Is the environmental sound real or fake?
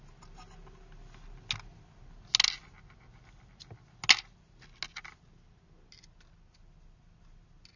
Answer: real